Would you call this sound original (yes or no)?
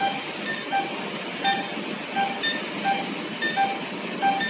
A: yes